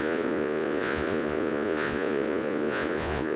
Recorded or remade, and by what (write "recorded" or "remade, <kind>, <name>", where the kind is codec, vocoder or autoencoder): remade, vocoder, Vocos